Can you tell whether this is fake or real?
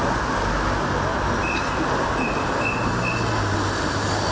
real